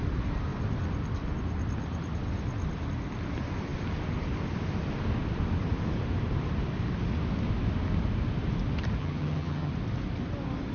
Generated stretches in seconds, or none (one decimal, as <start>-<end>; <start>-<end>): 9.0-9.7